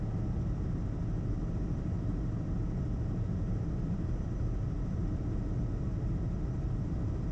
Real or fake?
fake